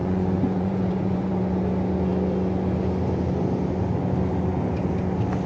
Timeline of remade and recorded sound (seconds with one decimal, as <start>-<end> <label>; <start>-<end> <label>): 0.0-1.3 remade; 1.3-5.5 recorded